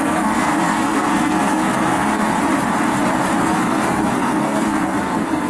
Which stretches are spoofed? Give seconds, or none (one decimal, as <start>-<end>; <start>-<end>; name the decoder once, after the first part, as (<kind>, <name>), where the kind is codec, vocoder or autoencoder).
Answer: 0.0-2.3 (codec, SNAC); 3.4-5.5